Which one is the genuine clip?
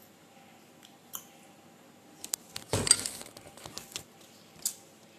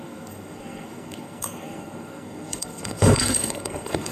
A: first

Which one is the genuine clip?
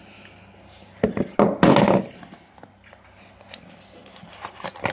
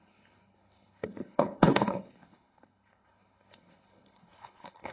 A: first